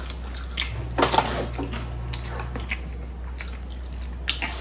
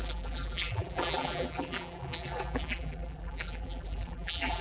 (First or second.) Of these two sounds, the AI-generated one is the second